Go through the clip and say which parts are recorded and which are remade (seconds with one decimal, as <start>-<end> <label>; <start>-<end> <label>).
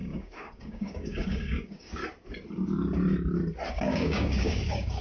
0.0-2.0 remade; 2.0-3.7 recorded; 3.7-5.0 remade